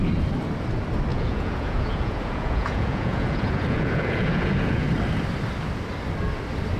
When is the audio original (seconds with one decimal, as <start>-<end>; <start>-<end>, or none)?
0.0-1.1; 4.9-6.8